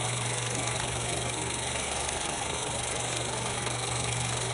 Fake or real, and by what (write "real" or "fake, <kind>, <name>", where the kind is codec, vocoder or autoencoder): fake, codec, SNAC